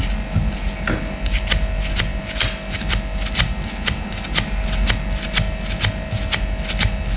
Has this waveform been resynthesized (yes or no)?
no